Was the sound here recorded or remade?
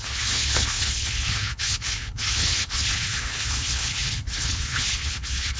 remade